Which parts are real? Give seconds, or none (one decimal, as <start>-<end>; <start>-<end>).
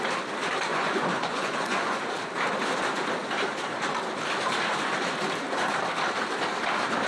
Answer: 0.0-0.7; 2.0-7.1